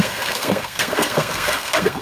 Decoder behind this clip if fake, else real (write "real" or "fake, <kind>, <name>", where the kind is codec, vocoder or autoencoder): fake, codec, SNAC